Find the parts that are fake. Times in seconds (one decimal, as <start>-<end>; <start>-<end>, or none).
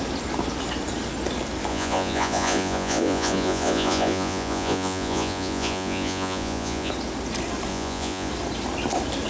1.7-6.9; 7.7-8.3